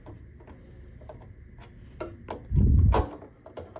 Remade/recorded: recorded